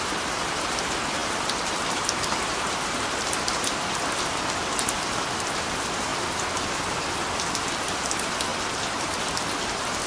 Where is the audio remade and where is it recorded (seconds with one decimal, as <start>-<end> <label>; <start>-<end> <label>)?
0.0-10.1 recorded